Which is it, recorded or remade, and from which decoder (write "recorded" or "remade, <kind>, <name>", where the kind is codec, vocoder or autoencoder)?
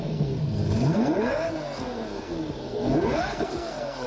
remade, codec, SNAC